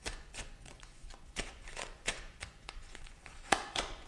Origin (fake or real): fake